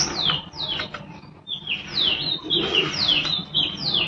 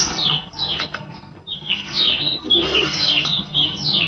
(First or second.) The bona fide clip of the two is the first